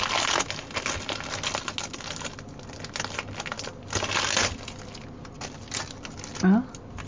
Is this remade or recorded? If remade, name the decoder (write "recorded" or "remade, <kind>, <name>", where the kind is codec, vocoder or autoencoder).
recorded